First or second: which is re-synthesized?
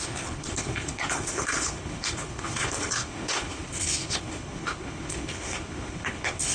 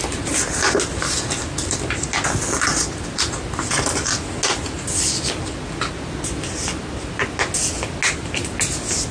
first